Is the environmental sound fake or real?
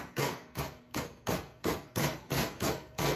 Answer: fake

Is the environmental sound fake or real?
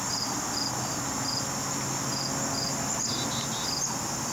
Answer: real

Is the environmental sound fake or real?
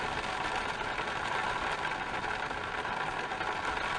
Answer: real